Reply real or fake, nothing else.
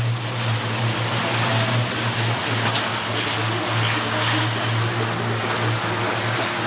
real